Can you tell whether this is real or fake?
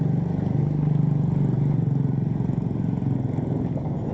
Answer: real